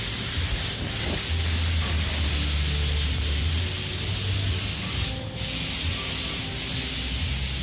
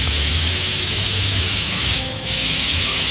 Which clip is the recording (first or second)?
first